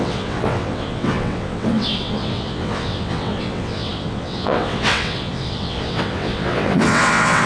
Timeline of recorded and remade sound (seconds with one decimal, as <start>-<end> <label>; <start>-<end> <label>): 0.0-7.5 remade